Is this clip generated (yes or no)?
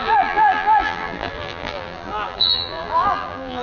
yes